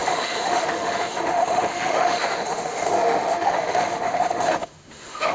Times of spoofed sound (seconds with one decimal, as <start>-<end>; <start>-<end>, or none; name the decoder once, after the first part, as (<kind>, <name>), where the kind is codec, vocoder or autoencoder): 0.0-5.3 (autoencoder, DAC-VAE)